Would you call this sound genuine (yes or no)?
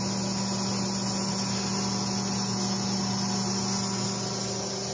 yes